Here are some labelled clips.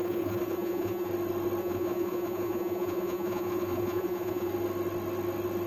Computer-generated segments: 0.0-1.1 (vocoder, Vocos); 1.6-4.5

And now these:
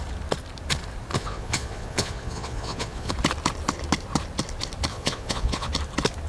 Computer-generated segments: 1.1-3.1 (vocoder, Vocos); 4.9-5.7

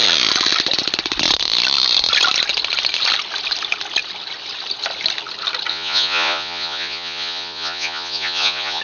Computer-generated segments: 5.7-8.8 (vocoder, Vocos)